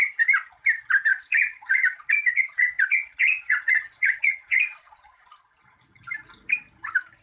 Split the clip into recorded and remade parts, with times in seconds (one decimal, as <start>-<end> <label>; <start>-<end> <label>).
0.0-1.1 recorded; 1.1-5.4 remade; 5.4-7.2 recorded